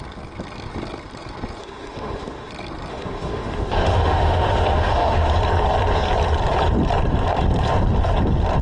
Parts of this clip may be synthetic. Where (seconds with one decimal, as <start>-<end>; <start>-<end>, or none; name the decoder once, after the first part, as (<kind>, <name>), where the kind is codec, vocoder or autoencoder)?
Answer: 1.6-2.5 (autoencoder, DAC-VAE); 2.9-5.3